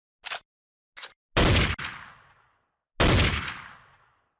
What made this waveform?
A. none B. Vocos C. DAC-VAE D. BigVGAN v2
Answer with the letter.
A